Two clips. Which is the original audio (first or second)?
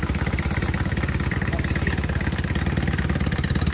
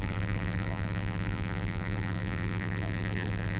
first